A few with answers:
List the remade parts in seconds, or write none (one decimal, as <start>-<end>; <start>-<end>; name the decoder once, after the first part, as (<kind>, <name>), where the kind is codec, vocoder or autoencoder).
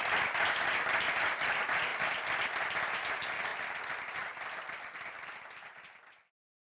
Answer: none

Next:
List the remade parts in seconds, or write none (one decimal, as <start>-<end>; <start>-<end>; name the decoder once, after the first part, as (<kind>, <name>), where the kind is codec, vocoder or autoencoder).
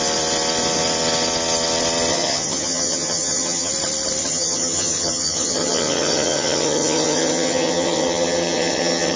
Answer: 2.1-3.7 (vocoder, HiFi-GAN); 4.2-9.2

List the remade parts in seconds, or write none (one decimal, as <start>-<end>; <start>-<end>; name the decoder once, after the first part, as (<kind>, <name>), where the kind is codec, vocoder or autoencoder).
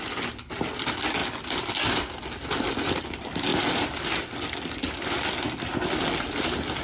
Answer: none